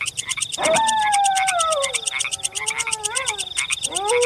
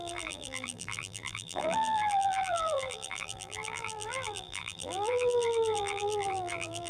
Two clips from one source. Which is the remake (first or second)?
second